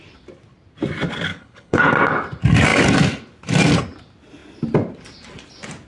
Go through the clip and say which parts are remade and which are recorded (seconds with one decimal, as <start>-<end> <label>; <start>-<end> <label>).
0.0-1.3 recorded; 1.3-1.9 remade; 1.9-5.9 recorded